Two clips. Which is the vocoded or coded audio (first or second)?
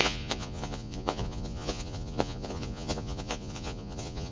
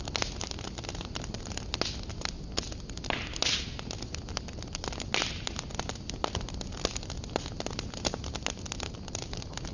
first